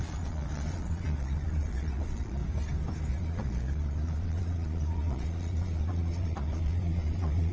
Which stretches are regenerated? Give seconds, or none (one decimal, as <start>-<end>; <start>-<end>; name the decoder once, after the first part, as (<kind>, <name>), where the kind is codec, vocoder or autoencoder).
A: 0.0-2.4 (vocoder, Vocos); 3.1-7.5